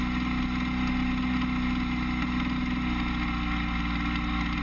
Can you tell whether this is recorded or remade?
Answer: recorded